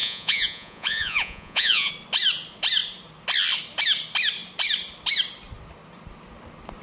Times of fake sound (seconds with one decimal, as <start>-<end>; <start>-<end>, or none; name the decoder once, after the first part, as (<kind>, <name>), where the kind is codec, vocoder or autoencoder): 0.0-1.9 (vocoder, Vocos)